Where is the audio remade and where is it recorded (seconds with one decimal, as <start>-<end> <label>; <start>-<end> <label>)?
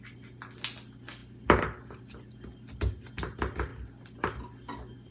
0.0-5.1 recorded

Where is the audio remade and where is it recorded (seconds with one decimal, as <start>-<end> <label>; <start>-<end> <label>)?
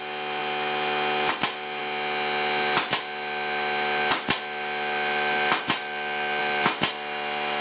0.0-0.4 remade; 0.4-1.3 recorded; 1.3-1.8 remade; 1.8-6.4 recorded; 6.4-7.6 remade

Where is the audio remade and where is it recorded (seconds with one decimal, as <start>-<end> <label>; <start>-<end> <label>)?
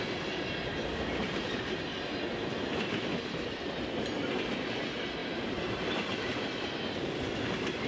0.0-1.9 remade; 1.9-2.5 recorded; 2.5-7.9 remade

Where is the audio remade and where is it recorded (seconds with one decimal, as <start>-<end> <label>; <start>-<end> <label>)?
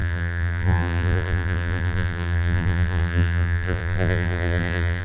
0.0-5.0 remade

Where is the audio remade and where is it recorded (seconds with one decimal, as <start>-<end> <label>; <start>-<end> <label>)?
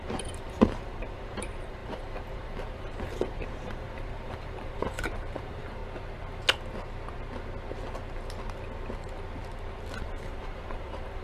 0.0-5.8 remade; 5.8-10.0 recorded; 10.0-11.2 remade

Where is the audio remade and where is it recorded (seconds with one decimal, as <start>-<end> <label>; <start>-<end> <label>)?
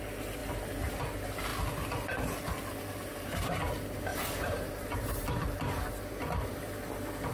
0.0-4.1 recorded; 4.1-5.9 remade; 5.9-7.3 recorded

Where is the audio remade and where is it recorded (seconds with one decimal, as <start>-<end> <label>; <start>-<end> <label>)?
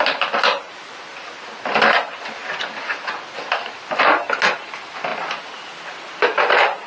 0.0-6.9 recorded